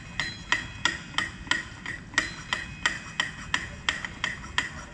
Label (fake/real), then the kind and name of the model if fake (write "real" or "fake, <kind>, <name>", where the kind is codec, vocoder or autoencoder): real